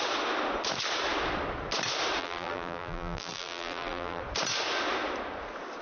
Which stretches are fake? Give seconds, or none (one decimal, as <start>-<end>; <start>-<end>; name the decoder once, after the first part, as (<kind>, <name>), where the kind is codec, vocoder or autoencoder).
2.2-4.2 (vocoder, BigVGAN v2)